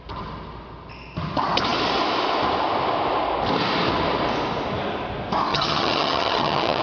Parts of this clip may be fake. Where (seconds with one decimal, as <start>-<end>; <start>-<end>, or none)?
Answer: 5.5-6.8